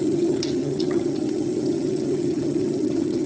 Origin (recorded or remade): remade